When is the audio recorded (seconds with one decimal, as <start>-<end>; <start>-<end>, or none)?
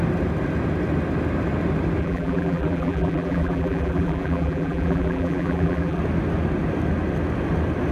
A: 0.0-2.0; 6.0-7.9